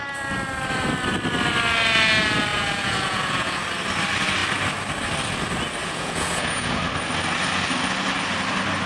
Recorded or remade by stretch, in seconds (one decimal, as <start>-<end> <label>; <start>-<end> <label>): 0.0-2.5 recorded; 2.5-3.6 remade; 3.6-5.8 recorded; 5.8-6.8 remade; 6.8-8.9 recorded